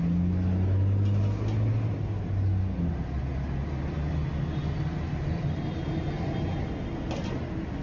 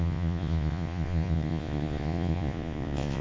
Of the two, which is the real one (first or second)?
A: first